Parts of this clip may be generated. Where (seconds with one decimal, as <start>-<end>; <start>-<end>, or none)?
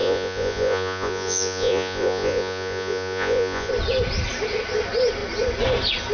0.0-3.7